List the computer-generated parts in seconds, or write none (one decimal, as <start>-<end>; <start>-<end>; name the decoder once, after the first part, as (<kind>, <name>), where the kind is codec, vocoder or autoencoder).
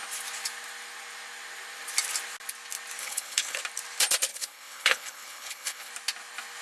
3.0-3.6 (codec, HILCodec); 4.3-5.9